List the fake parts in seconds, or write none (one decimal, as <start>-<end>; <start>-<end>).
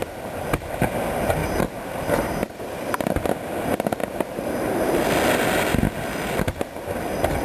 1.4-2.6; 4.0-5.0